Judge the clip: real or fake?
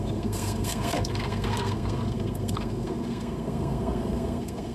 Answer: fake